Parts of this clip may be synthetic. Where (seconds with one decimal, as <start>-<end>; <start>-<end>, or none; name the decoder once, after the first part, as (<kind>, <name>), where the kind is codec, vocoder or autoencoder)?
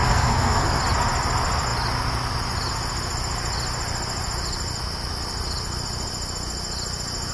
0.0-0.8 (codec, SNAC)